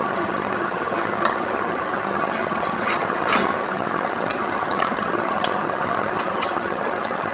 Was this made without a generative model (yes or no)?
no